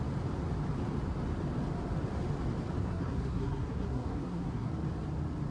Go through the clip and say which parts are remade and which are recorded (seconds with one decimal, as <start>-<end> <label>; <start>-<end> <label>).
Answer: 0.0-2.8 recorded; 2.8-4.7 remade; 4.7-5.5 recorded